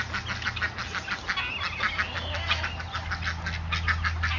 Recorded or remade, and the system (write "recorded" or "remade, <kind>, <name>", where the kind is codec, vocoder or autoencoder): recorded